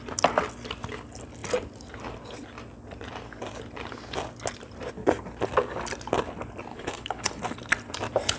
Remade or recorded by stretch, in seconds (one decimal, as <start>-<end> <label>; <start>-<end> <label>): 0.0-6.7 recorded; 6.7-7.4 remade; 7.4-8.4 recorded